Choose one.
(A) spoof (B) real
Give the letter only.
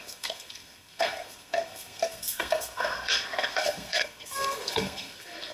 A